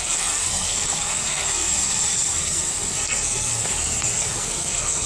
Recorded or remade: remade